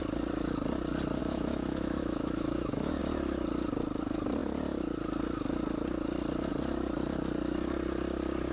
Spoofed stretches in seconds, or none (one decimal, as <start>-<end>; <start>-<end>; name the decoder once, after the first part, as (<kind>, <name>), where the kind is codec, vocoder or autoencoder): 1.2-3.0 (autoencoder, DAC-VAE)